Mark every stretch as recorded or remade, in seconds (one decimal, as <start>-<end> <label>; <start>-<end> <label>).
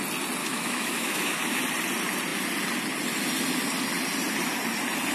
0.0-0.4 recorded; 0.4-1.6 remade; 1.6-5.1 recorded